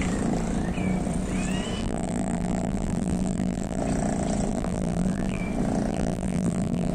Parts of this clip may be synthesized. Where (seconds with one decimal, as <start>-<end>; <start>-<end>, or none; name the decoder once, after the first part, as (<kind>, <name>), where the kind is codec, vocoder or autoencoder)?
1.8-3.8 (vocoder, BigVGAN v2); 4.5-5.4; 5.9-6.9